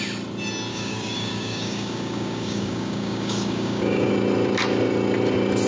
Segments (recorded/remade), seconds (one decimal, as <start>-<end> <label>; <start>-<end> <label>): 0.0-0.7 recorded; 0.7-4.1 remade; 4.1-5.7 recorded